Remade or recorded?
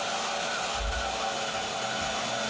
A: recorded